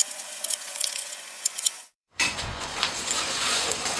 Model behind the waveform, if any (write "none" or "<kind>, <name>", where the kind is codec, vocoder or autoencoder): vocoder, Vocos